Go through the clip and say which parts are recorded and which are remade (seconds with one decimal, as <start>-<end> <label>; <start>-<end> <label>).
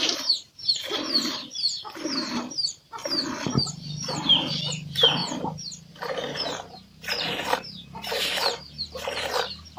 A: 0.0-3.0 remade; 3.0-4.7 recorded; 4.7-5.2 remade; 5.2-5.9 recorded; 5.9-9.8 remade